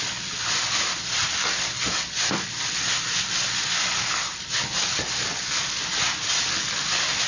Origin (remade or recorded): recorded